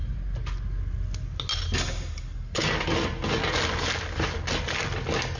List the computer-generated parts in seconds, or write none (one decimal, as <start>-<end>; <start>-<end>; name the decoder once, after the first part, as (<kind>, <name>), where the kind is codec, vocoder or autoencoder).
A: none

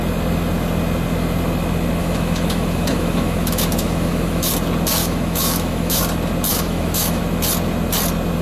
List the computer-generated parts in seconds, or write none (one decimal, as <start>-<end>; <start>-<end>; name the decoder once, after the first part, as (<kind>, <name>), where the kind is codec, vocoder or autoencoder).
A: 2.0-4.5 (autoencoder, DAC-VAE); 5.0-6.0; 6.5-7.2

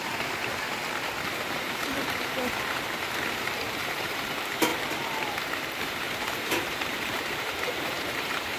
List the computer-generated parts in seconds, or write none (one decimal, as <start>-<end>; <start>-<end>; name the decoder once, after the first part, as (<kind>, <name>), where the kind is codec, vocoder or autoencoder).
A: 0.0-0.8 (vocoder, BigVGAN v2); 1.4-4.7; 5.8-8.6

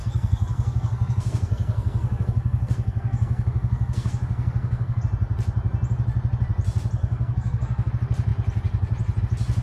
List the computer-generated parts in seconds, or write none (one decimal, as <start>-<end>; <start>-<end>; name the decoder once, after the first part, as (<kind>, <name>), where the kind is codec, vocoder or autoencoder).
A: 0.0-5.0 (codec, SNAC); 7.0-7.9

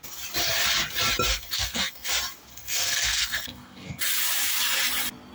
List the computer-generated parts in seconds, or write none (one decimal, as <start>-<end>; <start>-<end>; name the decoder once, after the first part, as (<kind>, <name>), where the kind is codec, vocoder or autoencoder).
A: 1.3-2.1 (codec, SNAC); 2.5-4.0